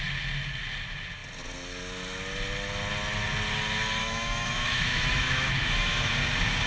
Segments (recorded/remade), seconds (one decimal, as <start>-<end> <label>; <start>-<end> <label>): 0.0-4.0 recorded; 4.0-6.1 remade; 6.1-6.7 recorded